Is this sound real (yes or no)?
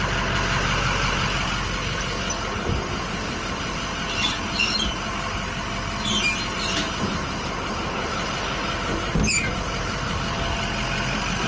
yes